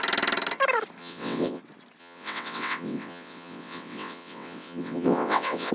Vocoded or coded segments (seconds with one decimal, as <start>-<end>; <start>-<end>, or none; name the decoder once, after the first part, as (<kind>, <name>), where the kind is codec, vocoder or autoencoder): 1.0-1.6 (vocoder, WaveNeXt); 2.0-5.7

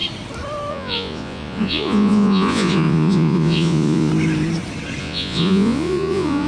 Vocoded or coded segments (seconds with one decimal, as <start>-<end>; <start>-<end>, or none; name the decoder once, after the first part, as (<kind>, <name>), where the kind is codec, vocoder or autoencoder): 0.7-4.1 (vocoder, Vocos); 5.0-6.5